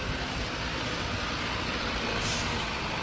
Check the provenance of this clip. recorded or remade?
recorded